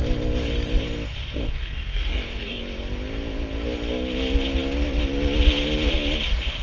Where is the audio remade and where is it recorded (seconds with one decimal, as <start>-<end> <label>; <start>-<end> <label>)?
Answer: 0.0-1.4 recorded; 1.4-2.6 remade; 2.6-6.6 recorded